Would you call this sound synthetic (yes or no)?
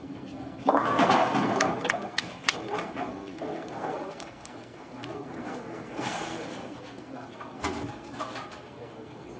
yes